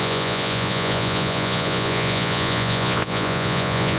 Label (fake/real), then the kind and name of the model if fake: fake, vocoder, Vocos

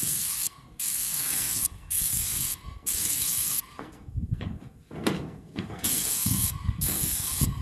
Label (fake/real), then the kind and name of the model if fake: fake, codec, SNAC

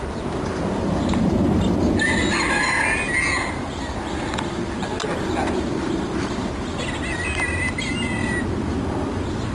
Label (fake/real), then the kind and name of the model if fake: real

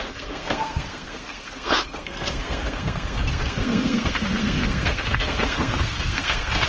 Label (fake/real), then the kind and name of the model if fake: fake, codec, SNAC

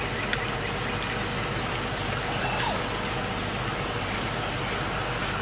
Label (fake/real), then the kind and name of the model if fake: real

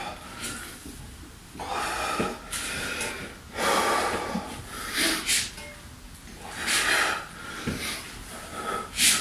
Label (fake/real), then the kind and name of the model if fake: real